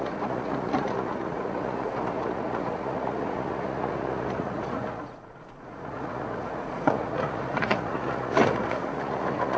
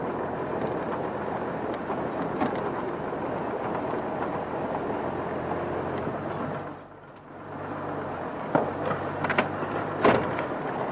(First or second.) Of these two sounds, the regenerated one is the first